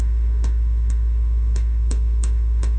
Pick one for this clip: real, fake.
fake